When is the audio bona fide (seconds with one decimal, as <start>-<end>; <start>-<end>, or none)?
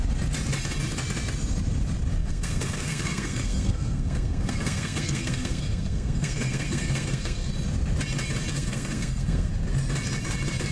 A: 0.0-2.2; 7.5-8.5; 9.5-10.7